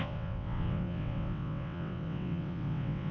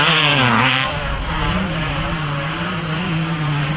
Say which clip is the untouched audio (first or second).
second